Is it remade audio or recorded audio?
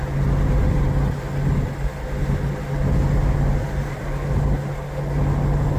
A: recorded